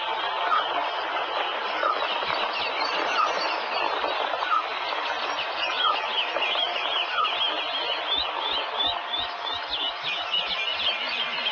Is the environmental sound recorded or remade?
remade